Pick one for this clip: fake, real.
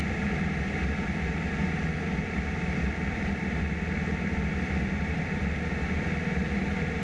fake